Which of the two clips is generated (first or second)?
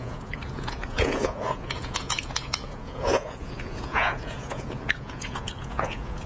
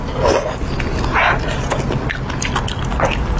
first